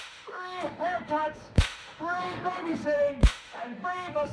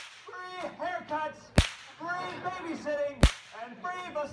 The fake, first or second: first